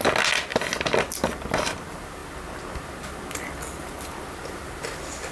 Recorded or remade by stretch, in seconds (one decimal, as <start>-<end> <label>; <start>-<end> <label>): 0.0-5.3 recorded